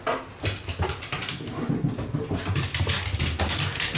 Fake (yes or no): no